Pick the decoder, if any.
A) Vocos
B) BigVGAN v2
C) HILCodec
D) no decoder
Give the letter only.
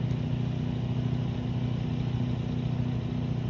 D